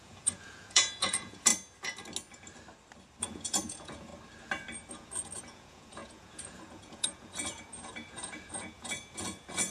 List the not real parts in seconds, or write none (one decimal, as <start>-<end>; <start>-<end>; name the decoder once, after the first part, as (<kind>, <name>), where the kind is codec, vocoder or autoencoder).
0.0-1.5 (vocoder, Vocos); 3.2-4.1; 4.9-9.7